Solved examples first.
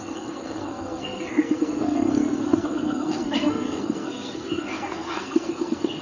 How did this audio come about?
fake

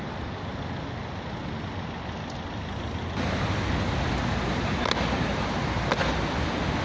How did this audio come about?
real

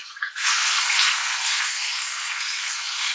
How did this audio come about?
fake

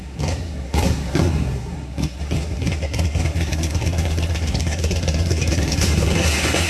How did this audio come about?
fake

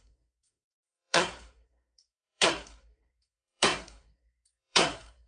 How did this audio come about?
fake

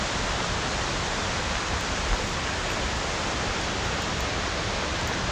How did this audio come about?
real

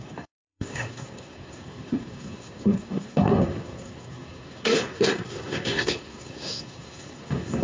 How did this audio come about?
fake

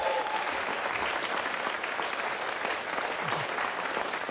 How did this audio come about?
real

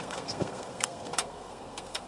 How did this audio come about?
fake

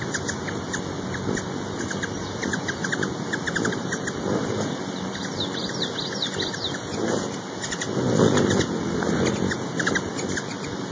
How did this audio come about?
real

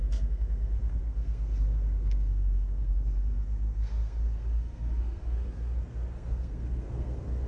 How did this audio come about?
fake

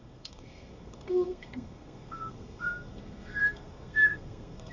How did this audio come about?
fake